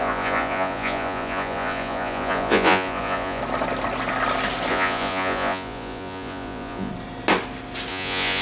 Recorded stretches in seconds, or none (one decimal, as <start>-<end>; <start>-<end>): 3.4-4.7; 6.9-7.9

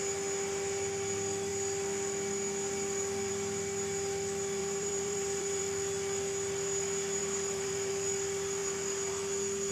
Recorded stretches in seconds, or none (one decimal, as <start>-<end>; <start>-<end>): 0.0-4.6; 5.6-7.2; 7.9-9.7

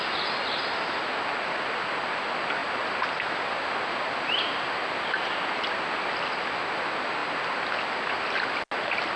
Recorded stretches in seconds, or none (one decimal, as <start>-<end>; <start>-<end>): 0.0-9.2

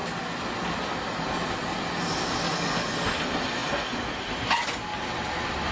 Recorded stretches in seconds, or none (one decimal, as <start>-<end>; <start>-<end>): 0.0-5.7

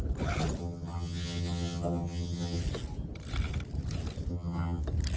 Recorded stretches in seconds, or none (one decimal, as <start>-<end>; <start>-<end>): 0.0-0.6; 2.6-4.3; 4.8-5.2